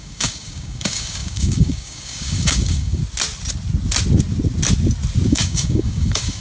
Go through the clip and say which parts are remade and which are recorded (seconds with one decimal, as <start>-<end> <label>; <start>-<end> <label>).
0.0-3.0 remade; 3.0-5.3 recorded; 5.3-6.4 remade